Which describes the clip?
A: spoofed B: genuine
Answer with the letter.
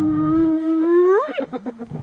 A